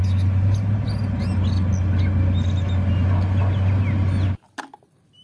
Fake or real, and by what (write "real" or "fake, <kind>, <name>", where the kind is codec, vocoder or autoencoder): real